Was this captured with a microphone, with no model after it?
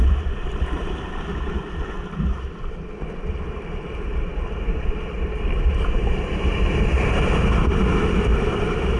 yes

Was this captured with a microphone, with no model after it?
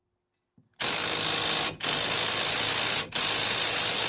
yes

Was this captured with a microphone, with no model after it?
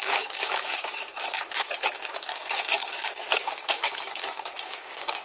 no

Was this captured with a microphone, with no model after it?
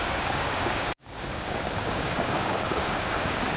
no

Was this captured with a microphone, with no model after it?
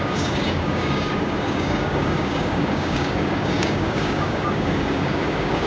no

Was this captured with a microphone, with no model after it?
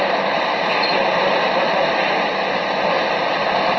yes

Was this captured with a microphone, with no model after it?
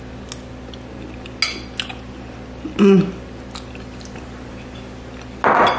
yes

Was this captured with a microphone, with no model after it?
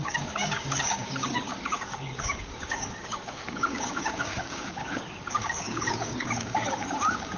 no